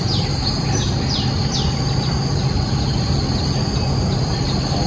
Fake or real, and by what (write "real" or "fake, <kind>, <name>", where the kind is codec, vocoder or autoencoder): real